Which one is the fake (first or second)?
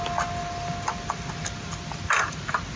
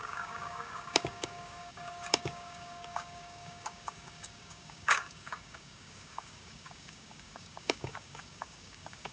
second